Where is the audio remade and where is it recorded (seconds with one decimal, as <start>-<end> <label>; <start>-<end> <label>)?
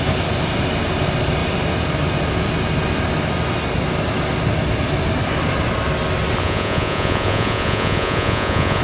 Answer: 0.0-6.4 recorded; 6.4-8.8 remade